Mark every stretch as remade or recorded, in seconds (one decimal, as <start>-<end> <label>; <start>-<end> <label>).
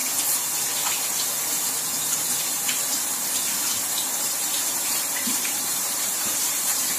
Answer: 0.0-4.2 recorded; 4.2-7.0 remade